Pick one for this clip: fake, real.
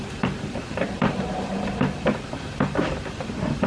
fake